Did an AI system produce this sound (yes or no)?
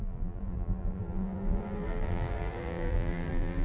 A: yes